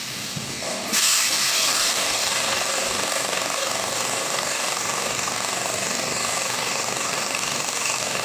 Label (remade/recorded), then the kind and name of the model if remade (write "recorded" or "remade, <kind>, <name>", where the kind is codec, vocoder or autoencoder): remade, codec, DAC